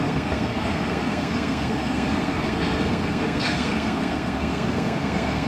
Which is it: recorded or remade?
remade